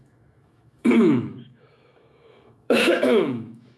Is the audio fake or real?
fake